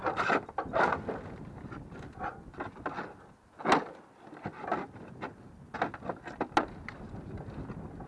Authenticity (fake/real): real